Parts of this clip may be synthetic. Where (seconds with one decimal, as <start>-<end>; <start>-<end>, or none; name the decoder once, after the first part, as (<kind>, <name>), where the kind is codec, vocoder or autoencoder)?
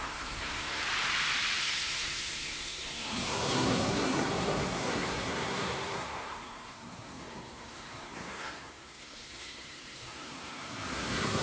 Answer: 0.0-0.8 (codec, SNAC); 1.6-11.4